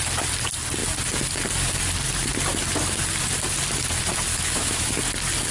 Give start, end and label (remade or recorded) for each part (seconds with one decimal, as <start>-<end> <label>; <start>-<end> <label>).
0.0-4.3 recorded; 4.3-4.9 remade; 4.9-5.5 recorded